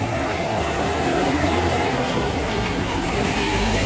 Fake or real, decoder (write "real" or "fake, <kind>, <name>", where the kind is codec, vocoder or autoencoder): fake, codec, SNAC